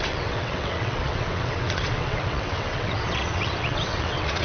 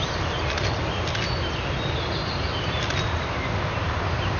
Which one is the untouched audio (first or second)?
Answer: second